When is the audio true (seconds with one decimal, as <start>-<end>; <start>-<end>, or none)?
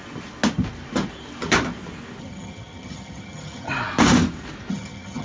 0.0-2.2; 3.7-4.7